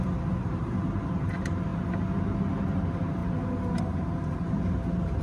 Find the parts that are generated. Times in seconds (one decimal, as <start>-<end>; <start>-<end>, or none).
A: 0.0-3.2; 3.8-5.2